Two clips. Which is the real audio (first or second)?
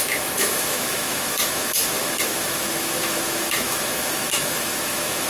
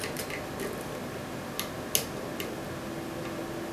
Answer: second